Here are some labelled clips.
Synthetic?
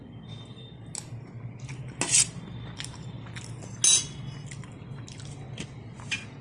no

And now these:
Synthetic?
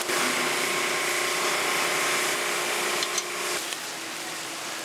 no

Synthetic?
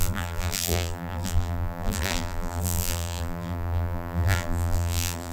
yes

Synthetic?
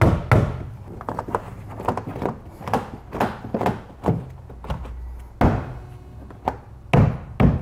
no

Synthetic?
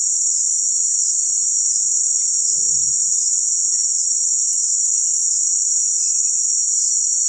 yes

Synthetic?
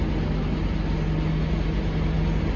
no